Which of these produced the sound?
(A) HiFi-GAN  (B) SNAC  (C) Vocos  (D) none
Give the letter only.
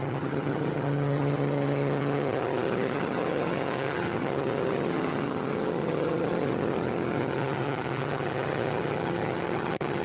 A